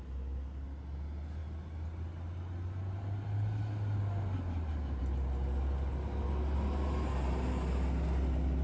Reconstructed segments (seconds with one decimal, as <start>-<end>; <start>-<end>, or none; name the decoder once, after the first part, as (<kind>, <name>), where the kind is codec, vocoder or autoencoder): none